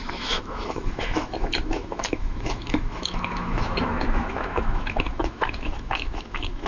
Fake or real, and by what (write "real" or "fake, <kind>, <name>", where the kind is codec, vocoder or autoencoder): fake, autoencoder, DAC-VAE